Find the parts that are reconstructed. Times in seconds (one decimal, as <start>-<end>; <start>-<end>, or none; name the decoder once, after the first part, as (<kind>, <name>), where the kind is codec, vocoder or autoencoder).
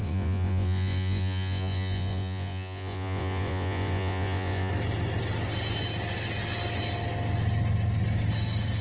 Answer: 0.0-4.7 (vocoder, Vocos)